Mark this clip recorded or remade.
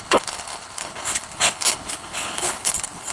remade